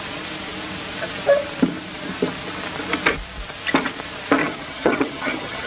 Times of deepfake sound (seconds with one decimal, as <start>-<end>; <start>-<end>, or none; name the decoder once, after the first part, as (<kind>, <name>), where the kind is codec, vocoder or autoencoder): 4.4-5.7 (vocoder, HiFi-GAN)

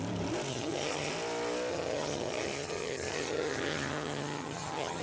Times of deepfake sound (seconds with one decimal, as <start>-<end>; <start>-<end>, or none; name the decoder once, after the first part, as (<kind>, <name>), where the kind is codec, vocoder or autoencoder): 0.5-1.1 (vocoder, HiFi-GAN); 1.7-5.0

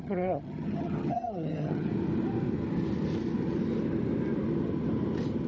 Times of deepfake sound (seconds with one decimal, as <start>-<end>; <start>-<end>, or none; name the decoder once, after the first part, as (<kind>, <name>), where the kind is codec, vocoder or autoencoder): 0.0-1.9 (vocoder, HiFi-GAN)

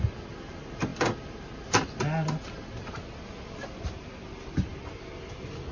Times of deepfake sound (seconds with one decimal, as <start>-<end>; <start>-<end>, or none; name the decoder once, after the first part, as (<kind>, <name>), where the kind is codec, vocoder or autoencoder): none